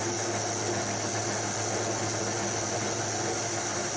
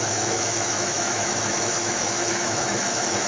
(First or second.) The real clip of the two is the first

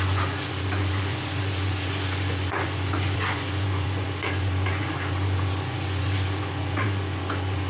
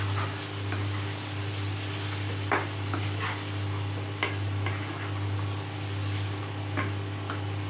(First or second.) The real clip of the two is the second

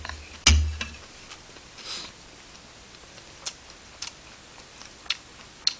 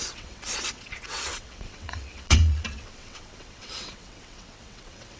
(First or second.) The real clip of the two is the first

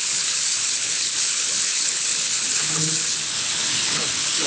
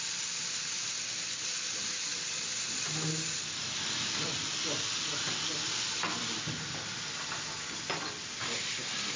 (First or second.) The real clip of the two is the second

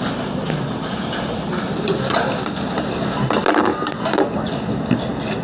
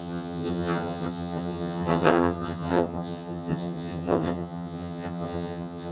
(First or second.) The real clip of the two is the first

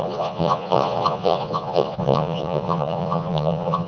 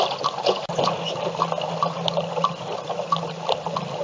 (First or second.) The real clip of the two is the second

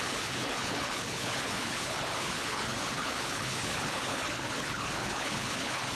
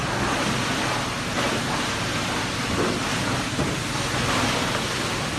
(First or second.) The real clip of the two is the second